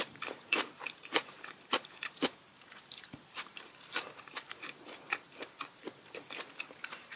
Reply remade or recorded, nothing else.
remade